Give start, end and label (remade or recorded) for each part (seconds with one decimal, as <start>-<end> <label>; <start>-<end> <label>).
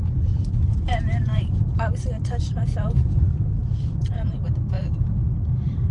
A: 0.0-0.9 recorded; 0.9-4.4 remade; 4.4-5.9 recorded